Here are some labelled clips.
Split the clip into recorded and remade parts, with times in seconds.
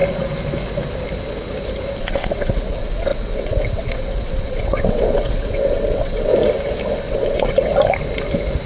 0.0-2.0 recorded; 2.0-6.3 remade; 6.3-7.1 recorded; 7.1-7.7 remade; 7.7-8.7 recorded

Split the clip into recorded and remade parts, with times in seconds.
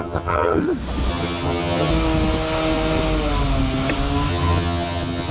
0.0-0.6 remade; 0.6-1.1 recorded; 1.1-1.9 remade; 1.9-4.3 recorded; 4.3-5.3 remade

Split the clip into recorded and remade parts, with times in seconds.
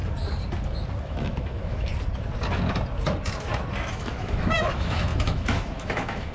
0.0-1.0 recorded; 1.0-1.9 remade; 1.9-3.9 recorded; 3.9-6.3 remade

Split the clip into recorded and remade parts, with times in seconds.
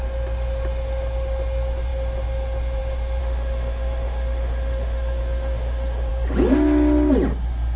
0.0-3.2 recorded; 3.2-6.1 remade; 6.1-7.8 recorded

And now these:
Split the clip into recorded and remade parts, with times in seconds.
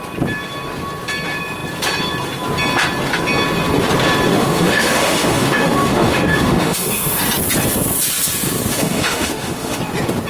0.0-4.3 recorded; 4.3-7.2 remade; 7.2-8.7 recorded; 8.7-9.8 remade; 9.8-10.3 recorded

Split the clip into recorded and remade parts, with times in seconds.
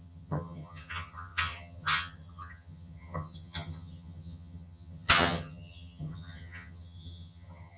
0.0-7.8 remade